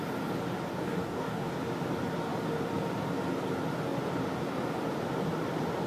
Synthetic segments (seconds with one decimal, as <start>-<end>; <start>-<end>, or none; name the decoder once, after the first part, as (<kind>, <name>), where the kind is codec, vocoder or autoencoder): 0.7-1.5 (codec, DAC)